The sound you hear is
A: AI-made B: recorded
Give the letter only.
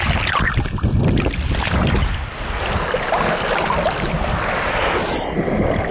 B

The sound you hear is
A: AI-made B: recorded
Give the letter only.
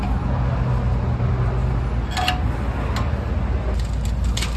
B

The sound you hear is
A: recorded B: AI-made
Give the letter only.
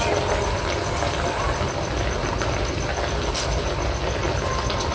A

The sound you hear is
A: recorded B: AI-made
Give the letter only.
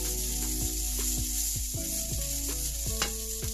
A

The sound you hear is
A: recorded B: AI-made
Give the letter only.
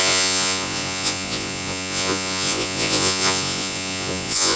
B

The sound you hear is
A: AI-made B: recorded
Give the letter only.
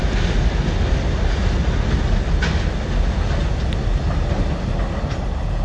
B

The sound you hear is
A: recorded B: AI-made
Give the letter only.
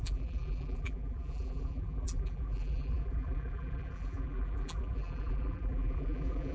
B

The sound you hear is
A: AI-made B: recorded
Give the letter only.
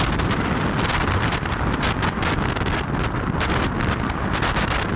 B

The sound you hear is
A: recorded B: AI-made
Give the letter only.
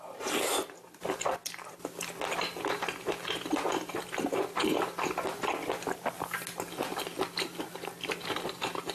A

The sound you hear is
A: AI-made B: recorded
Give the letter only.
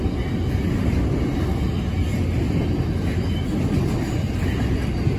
B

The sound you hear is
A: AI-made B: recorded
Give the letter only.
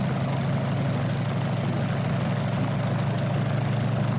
B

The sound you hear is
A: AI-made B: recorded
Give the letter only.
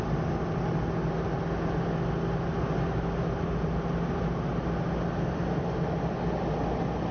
B